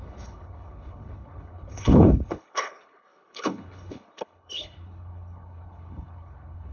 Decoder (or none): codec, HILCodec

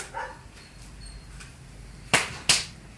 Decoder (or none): none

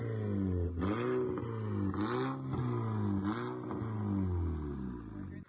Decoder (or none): none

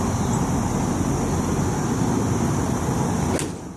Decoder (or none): none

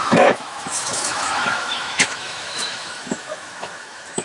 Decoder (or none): autoencoder, DAC-VAE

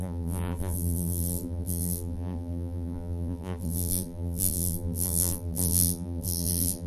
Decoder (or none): vocoder, BigVGAN v2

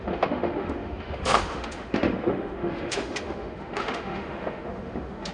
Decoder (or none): autoencoder, DAC-VAE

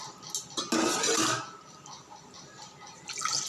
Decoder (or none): none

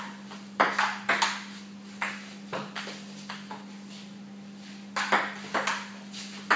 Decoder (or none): none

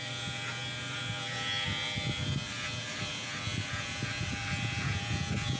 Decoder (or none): vocoder, Vocos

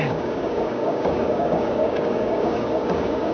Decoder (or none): codec, DAC